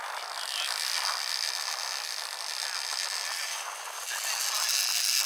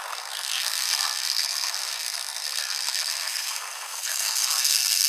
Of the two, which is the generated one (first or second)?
second